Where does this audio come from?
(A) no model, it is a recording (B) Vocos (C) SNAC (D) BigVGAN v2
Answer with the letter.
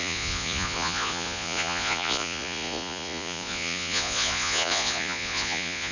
B